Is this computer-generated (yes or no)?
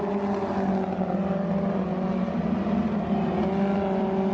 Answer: no